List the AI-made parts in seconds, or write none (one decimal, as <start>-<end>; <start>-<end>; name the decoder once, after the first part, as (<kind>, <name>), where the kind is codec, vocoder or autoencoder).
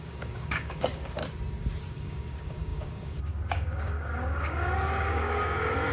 0.0-1.2 (codec, DAC); 1.9-5.9